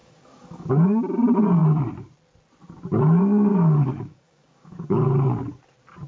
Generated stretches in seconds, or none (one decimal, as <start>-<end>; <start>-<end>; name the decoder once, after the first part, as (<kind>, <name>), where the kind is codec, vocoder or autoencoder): 0.0-0.7 (codec, DAC); 3.5-5.6